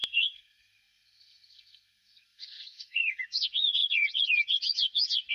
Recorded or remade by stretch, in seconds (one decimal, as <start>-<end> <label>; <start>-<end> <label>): 0.0-3.2 remade; 3.2-5.3 recorded